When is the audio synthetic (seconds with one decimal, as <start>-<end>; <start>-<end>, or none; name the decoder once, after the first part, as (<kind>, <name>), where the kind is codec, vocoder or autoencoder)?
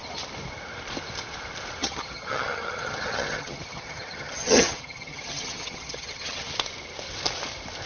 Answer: 1.8-6.5 (vocoder, HiFi-GAN)